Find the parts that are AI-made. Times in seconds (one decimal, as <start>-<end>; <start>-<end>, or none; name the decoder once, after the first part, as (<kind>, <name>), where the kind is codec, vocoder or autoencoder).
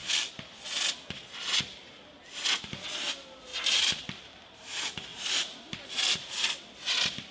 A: 3.5-4.0 (vocoder, BigVGAN v2); 5.1-6.0